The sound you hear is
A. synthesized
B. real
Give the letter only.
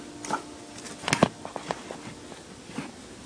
B